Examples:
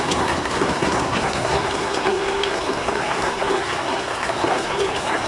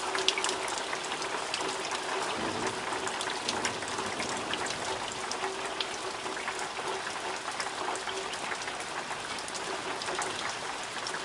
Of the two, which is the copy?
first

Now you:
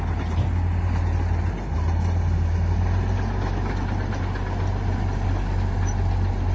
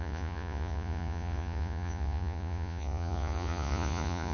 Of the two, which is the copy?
second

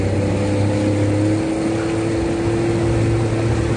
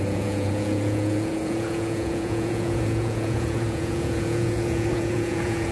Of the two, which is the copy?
second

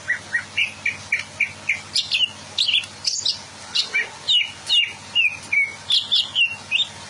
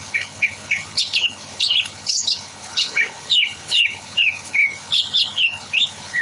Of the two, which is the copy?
second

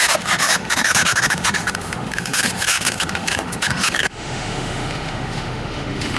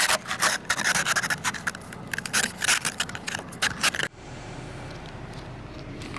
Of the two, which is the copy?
first